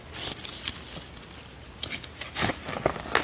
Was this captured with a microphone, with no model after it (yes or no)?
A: yes